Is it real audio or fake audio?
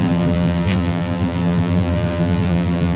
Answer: fake